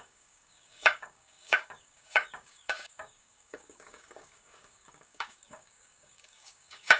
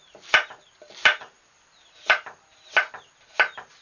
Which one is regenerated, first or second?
first